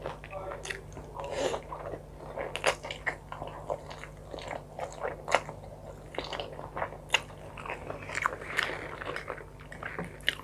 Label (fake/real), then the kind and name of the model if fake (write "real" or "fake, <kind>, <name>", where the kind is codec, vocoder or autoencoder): real